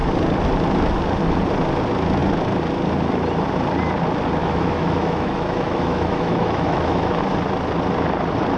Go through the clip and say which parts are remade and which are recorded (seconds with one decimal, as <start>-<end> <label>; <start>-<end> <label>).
0.0-4.4 recorded; 4.4-7.2 remade; 7.2-8.6 recorded